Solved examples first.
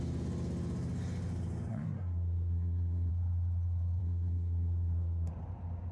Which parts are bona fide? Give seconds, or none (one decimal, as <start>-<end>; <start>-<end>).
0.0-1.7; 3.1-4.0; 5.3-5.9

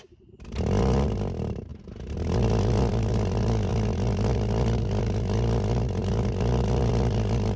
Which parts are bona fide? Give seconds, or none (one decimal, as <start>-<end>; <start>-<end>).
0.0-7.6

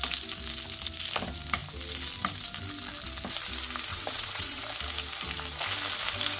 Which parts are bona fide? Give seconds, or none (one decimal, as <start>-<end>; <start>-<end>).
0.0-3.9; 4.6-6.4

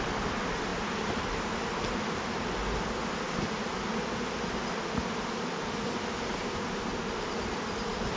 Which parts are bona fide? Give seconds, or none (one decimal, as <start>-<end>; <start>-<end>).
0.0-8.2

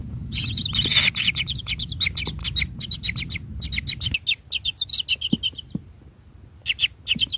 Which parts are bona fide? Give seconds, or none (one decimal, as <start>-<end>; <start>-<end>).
0.6-1.2; 1.9-7.4

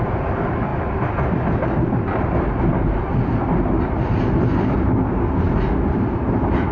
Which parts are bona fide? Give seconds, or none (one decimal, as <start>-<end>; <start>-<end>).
0.0-6.7

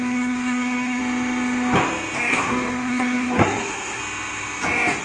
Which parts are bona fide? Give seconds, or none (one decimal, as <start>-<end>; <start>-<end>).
1.0-2.3; 4.0-5.0